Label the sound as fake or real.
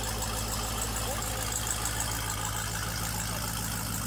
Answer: real